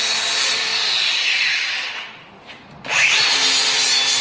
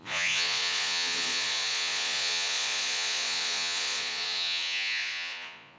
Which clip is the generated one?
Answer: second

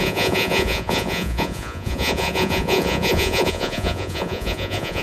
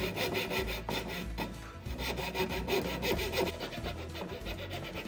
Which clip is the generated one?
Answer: first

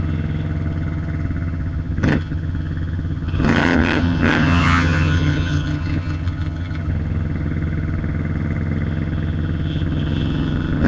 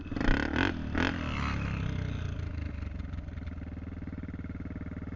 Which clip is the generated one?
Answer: first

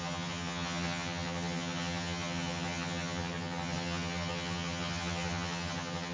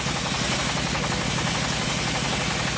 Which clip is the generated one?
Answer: first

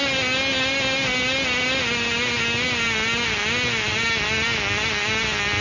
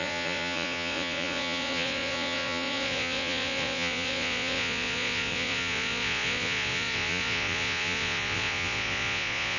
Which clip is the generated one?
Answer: second